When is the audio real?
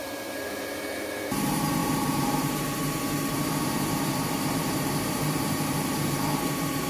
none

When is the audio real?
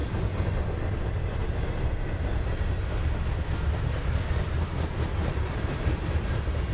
0.0-6.7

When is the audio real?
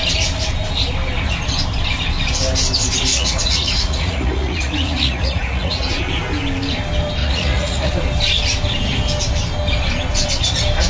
0.0-3.1; 5.9-7.2; 7.9-10.9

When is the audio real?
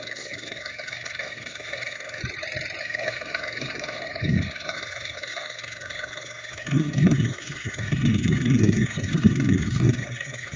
2.2-2.8